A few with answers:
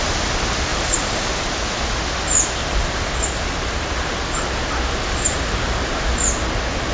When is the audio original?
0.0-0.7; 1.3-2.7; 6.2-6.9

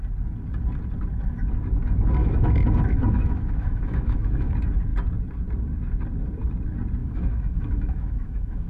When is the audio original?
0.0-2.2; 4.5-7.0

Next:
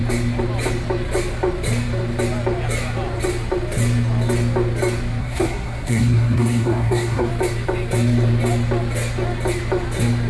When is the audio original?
0.0-5.2; 7.3-10.3

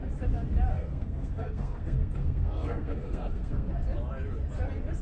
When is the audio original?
0.0-0.7; 3.7-5.0

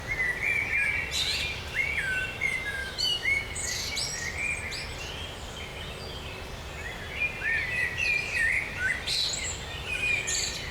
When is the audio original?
0.0-2.8; 3.6-10.7